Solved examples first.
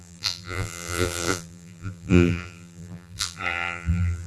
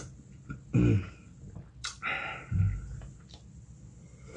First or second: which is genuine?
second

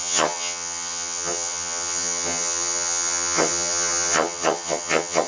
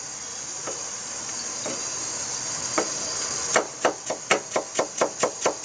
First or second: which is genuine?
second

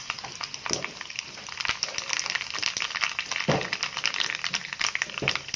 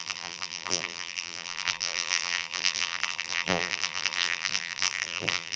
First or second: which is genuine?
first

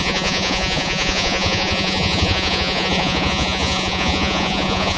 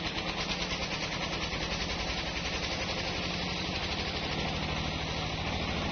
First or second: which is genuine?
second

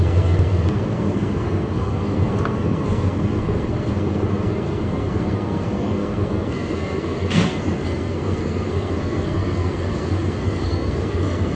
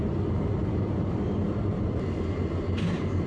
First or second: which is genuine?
second